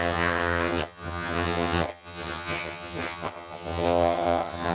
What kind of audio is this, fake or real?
fake